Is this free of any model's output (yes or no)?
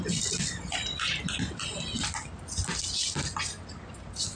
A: yes